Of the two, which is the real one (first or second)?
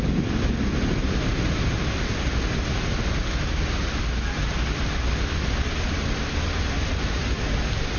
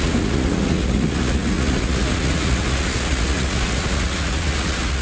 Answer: first